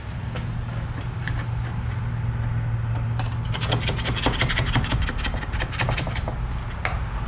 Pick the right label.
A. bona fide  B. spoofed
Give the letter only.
A